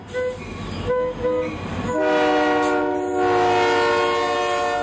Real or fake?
real